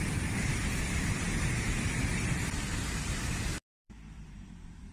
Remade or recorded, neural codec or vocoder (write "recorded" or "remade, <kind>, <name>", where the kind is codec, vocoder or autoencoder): remade, vocoder, BigVGAN v2